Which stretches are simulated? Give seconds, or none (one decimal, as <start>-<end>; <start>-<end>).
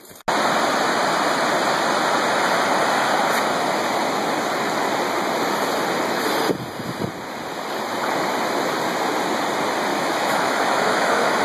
9.9-11.4